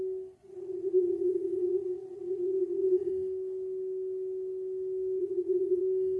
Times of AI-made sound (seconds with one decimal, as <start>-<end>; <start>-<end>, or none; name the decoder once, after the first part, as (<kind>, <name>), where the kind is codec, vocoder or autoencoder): 0.4-3.1 (vocoder, Vocos); 5.2-5.8

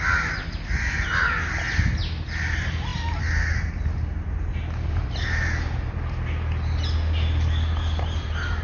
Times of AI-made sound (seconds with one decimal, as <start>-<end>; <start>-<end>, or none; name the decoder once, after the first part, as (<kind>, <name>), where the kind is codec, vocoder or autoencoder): none

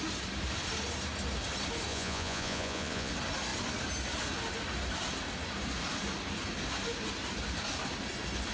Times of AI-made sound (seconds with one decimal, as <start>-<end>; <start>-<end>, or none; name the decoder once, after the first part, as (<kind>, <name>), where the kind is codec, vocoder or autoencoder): 1.9-3.1 (vocoder, Vocos)

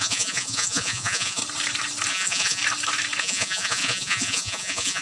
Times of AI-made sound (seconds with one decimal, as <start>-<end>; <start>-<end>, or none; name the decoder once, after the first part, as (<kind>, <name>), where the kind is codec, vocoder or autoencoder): 0.0-1.4 (vocoder, Vocos); 2.1-2.6; 3.2-5.0

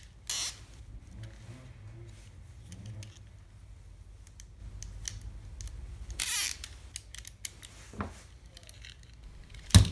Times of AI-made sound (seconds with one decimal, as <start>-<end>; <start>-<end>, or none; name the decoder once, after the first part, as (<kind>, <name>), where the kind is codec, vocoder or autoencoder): none

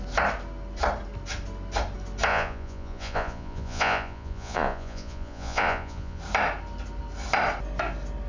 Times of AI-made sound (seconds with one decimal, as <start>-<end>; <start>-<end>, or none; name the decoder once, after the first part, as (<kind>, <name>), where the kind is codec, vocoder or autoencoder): 2.3-6.2 (vocoder, Vocos)

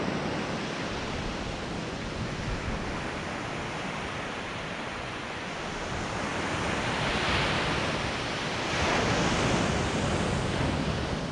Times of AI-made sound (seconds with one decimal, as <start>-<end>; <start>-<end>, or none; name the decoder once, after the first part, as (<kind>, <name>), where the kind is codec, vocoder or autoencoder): 1.8-2.4 (vocoder, Vocos); 4.9-5.6

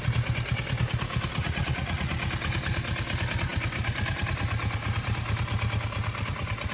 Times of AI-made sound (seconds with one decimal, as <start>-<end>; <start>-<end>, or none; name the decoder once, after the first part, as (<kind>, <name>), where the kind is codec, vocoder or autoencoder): 1.4-2.1 (vocoder, Vocos)